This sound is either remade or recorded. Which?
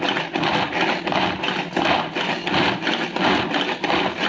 recorded